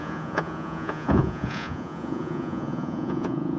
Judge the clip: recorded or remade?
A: remade